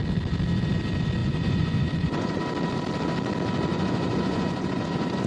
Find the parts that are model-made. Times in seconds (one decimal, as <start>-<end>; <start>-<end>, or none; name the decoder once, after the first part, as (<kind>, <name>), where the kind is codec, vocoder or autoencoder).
1.2-2.4 (vocoder, Vocos); 3.7-5.3